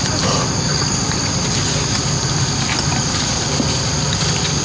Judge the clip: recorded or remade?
recorded